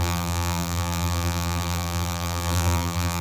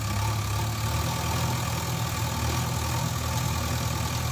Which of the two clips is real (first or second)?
second